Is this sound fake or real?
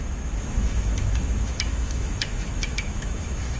fake